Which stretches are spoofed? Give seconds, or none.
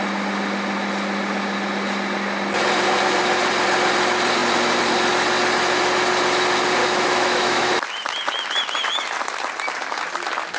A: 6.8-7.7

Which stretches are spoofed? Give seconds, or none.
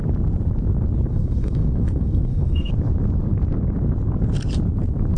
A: 1.1-2.7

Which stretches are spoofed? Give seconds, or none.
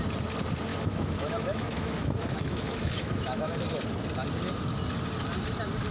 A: 0.7-3.5